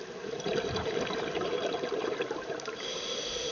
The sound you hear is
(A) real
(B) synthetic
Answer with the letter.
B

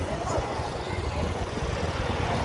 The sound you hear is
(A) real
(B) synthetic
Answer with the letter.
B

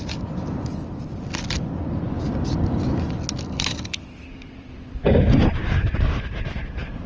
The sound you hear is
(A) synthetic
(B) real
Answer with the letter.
B